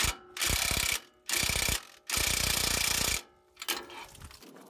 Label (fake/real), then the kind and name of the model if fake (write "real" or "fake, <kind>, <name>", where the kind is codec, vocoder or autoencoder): real